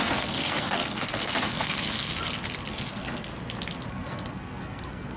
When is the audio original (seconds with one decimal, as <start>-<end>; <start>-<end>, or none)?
2.1-2.7; 3.3-3.9